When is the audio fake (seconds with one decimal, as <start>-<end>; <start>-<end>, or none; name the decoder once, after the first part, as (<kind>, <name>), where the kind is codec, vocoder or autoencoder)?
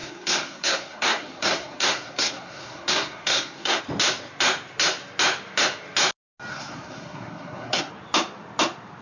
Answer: 0.0-3.8 (codec, SNAC); 6.5-7.9